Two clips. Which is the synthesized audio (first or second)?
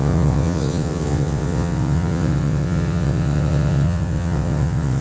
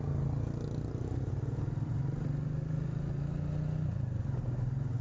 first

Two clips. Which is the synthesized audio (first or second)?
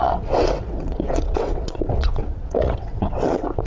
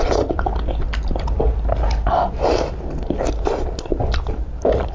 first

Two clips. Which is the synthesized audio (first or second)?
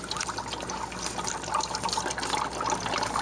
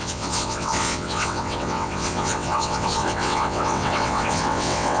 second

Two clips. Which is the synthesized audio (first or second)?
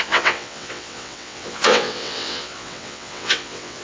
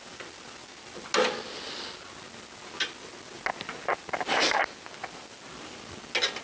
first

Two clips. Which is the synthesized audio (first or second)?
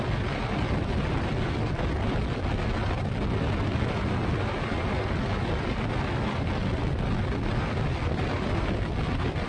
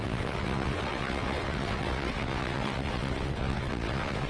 second